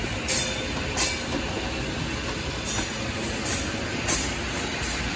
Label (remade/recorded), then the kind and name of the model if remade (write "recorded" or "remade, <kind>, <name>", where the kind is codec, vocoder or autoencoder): recorded